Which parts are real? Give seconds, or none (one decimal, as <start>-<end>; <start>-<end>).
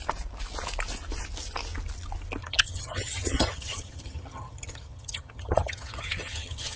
0.0-2.4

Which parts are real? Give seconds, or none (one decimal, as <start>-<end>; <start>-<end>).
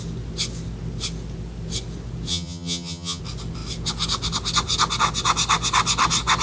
0.0-2.3; 3.2-6.4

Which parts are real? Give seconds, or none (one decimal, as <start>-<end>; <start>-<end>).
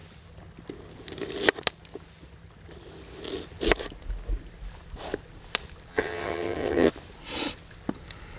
0.0-5.9; 6.9-8.4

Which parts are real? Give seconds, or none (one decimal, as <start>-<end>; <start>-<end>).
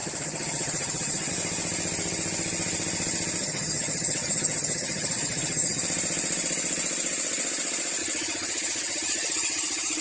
1.3-3.4; 5.8-8.0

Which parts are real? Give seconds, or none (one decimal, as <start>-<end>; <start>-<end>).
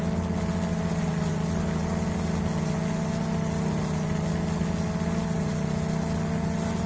0.0-6.9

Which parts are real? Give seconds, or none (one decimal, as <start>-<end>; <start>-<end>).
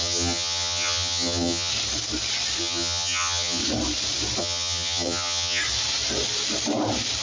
1.7-2.6; 3.6-4.4; 5.6-7.2